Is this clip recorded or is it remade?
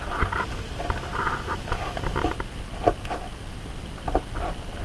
recorded